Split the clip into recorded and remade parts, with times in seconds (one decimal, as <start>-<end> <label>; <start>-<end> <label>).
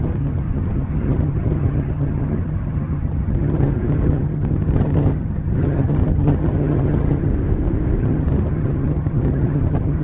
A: 0.0-7.3 remade; 7.3-8.0 recorded; 8.0-10.0 remade